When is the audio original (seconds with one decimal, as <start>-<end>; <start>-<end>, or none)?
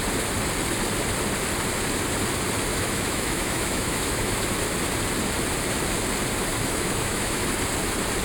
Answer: 0.0-2.7; 4.5-6.5; 7.4-8.2